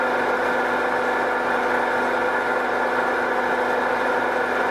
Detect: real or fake real